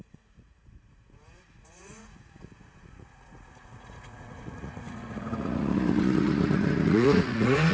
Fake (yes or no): yes